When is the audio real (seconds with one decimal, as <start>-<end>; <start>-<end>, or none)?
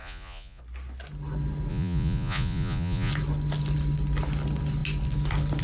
0.6-1.7; 3.1-5.6